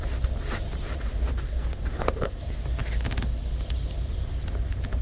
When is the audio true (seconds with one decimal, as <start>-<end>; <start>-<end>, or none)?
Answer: 0.0-1.3; 2.4-5.0